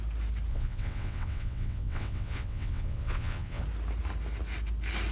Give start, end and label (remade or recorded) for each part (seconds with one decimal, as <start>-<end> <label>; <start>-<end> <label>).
0.0-0.5 recorded; 0.5-3.6 remade; 3.6-5.1 recorded